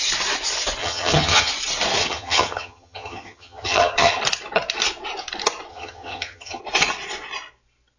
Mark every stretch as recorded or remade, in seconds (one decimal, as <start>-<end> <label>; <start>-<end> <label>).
0.0-0.8 recorded; 0.8-1.5 remade; 1.5-2.0 recorded; 2.0-4.2 remade; 4.2-5.7 recorded; 5.7-6.6 remade; 6.6-8.0 recorded

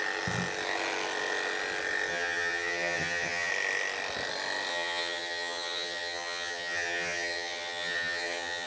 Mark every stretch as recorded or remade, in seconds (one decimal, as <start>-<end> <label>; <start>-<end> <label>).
0.0-2.1 recorded; 2.1-3.5 remade; 3.5-4.7 recorded; 4.7-8.7 remade

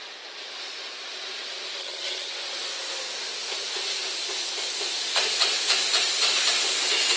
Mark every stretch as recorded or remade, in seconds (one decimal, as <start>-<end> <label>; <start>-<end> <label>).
0.0-1.8 recorded; 1.8-2.3 remade; 2.3-7.2 recorded

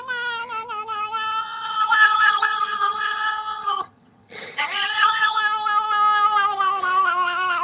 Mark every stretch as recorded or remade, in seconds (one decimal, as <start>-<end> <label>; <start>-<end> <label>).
0.0-1.4 recorded; 1.4-5.4 remade; 5.4-7.6 recorded